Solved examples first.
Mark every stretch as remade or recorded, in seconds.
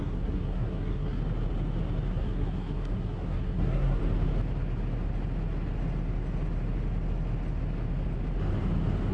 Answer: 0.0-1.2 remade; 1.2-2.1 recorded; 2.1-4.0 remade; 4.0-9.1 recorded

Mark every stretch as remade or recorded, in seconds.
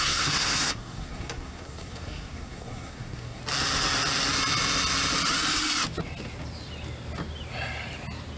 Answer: 0.0-3.4 remade; 3.4-8.4 recorded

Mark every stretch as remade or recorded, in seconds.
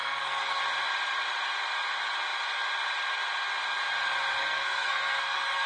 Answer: 0.0-0.6 remade; 0.6-4.4 recorded; 4.4-5.7 remade